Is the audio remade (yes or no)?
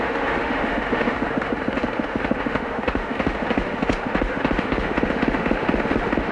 yes